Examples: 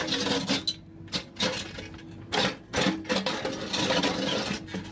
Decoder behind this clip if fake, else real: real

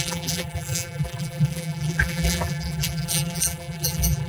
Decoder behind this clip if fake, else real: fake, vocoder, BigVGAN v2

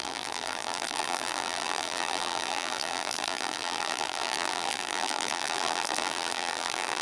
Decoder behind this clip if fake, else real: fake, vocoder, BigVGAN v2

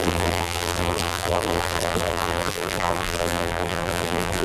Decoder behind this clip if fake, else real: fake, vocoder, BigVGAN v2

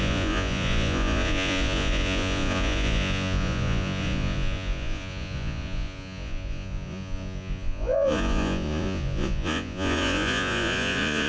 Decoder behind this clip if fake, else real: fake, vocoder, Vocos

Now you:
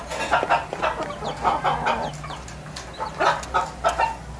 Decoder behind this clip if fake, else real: real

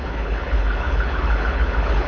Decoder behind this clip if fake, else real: fake, codec, HILCodec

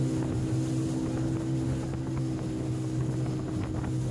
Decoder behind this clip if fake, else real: real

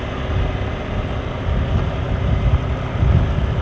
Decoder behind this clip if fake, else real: real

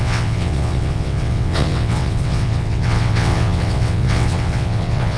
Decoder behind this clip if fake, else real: fake, vocoder, WaveNeXt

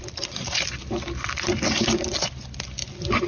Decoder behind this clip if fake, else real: real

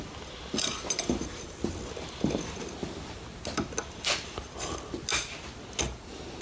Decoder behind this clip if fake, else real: real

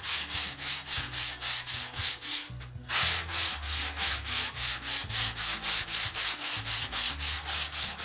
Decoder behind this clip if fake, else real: fake, codec, SNAC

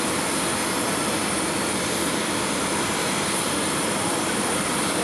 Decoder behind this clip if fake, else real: fake, vocoder, BigVGAN v2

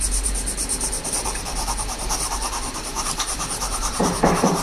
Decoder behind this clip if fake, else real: fake, vocoder, BigVGAN v2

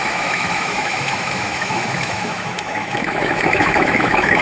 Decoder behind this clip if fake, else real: fake, autoencoder, DAC-VAE